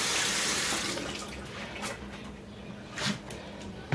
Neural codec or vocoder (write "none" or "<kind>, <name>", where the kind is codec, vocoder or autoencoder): none